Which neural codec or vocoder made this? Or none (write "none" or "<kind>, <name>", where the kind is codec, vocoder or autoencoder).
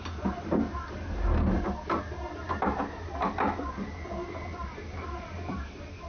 none